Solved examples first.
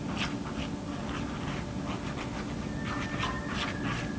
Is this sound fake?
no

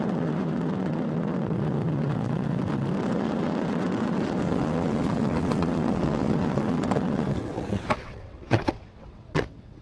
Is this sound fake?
yes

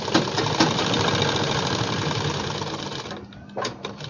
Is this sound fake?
no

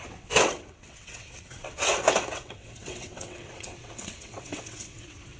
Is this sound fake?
yes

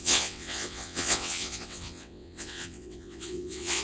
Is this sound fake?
yes